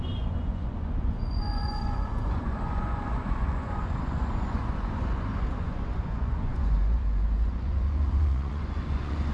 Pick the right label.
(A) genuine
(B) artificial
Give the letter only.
B